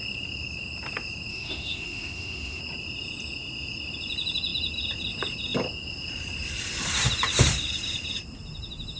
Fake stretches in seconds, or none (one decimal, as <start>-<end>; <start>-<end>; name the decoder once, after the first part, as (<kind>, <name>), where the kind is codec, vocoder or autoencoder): 1.3-2.6 (autoencoder, DAC-VAE)